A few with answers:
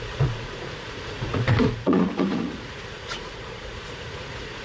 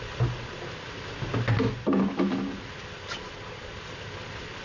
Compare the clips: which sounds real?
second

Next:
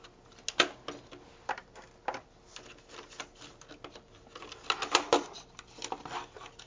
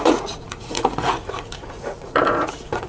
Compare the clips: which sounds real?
first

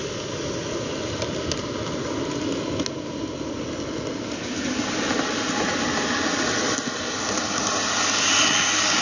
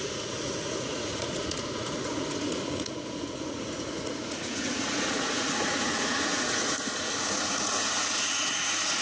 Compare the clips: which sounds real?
first